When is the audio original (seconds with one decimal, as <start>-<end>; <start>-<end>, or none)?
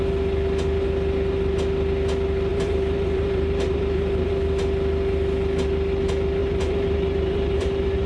0.0-2.5; 4.3-6.4